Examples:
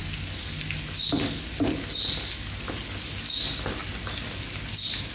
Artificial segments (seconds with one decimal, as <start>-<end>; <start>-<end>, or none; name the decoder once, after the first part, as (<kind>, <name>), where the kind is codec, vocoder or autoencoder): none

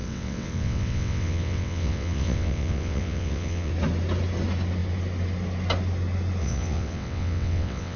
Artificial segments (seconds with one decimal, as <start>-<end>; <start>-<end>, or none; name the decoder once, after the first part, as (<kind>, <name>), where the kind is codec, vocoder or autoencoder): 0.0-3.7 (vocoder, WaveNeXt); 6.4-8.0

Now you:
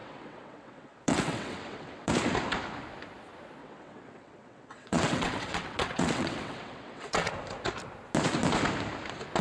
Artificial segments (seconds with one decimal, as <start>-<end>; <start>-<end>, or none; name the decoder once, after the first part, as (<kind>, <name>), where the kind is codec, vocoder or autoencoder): 0.0-2.1 (vocoder, WaveNeXt); 3.6-7.3